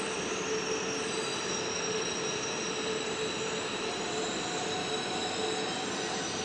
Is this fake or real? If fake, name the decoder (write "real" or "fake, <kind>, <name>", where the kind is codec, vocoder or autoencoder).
real